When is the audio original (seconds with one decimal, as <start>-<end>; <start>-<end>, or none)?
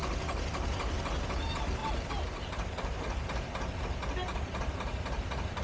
0.0-1.8; 3.8-4.3